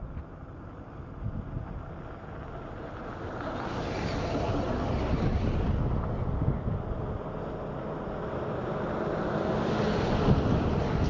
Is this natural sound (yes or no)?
yes